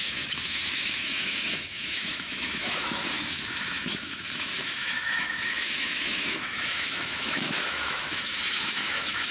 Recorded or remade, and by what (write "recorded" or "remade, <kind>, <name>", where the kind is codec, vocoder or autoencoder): remade, autoencoder, DAC-VAE